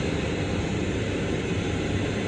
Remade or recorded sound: remade